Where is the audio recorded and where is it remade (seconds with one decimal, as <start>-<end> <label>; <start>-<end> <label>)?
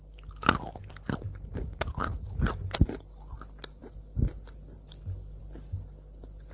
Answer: 0.0-6.5 recorded